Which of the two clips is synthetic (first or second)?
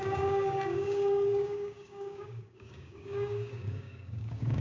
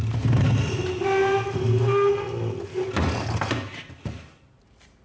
first